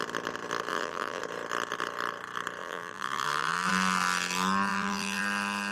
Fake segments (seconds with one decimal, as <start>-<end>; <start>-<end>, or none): 0.7-1.2; 2.6-3.7; 4.7-5.2